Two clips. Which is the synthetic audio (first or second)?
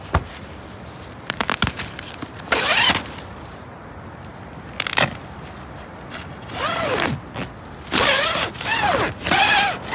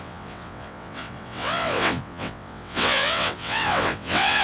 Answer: second